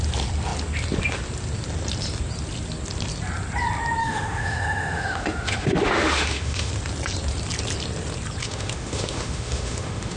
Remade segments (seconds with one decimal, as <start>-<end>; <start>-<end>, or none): 4.0-6.7; 8.4-10.2